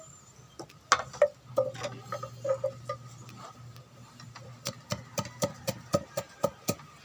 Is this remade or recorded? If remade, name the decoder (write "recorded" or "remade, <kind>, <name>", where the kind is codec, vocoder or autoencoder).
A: recorded